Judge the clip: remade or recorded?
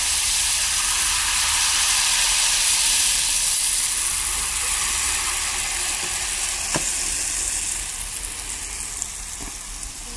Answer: recorded